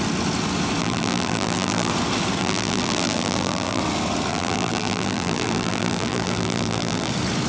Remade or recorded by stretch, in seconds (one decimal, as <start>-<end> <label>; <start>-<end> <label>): 0.0-0.8 recorded; 0.8-1.9 remade; 1.9-2.4 recorded; 2.4-3.8 remade; 3.8-4.3 recorded; 4.3-7.1 remade; 7.1-7.5 recorded